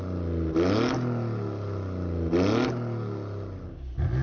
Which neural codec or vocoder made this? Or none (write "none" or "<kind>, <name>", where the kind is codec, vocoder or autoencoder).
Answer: none